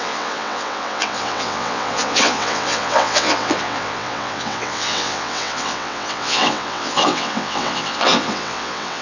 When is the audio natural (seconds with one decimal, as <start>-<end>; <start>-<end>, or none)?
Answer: none